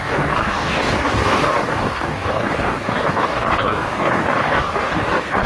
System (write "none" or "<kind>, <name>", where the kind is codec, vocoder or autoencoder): codec, DAC